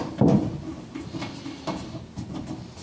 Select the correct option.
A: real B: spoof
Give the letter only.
A